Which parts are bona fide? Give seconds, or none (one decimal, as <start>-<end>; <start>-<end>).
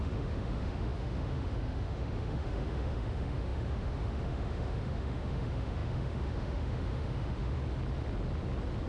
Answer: 7.6-8.9